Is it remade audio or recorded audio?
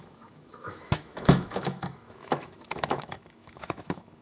remade